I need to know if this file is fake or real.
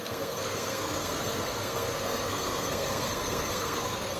fake